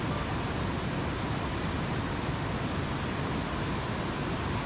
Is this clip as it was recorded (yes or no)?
yes